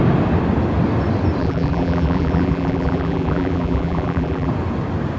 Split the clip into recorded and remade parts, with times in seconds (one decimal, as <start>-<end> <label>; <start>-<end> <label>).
0.0-1.4 recorded; 1.4-4.5 remade; 4.5-5.2 recorded